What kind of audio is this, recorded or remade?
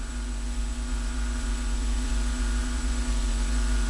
remade